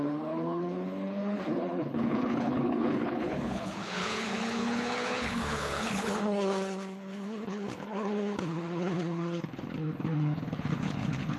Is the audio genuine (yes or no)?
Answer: no